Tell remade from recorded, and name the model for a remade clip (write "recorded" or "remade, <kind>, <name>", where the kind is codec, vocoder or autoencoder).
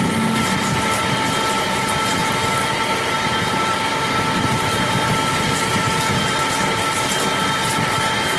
recorded